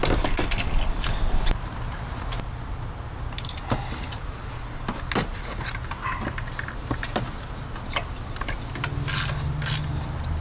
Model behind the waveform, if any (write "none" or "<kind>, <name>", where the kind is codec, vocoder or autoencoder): none